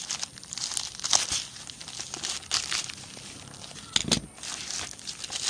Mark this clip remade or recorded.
recorded